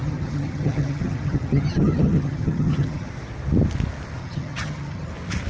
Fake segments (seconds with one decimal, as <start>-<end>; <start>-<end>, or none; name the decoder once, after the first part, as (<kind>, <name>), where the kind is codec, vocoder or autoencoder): 0.0-3.1 (vocoder, HiFi-GAN); 4.2-5.1